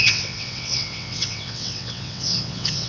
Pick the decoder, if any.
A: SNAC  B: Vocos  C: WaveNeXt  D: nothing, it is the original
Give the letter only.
C